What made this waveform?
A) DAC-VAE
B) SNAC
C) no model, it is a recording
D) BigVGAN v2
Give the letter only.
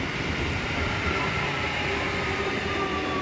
C